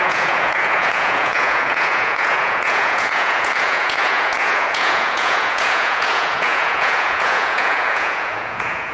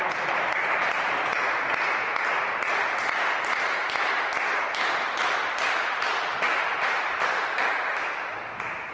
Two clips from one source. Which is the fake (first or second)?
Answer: first